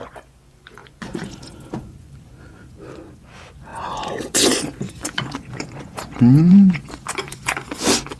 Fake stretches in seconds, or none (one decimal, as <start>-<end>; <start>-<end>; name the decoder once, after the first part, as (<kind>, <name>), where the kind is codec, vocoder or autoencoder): 0.0-8.2 (vocoder, Vocos)